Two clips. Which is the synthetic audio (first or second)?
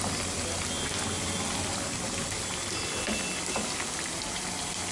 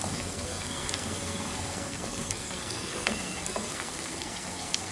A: second